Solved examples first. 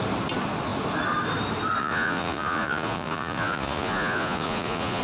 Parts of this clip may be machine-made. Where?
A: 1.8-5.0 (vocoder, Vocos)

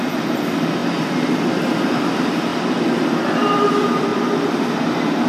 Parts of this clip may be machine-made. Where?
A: 0.8-2.0 (vocoder, BigVGAN v2); 4.1-4.6